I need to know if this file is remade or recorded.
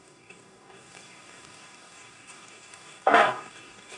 remade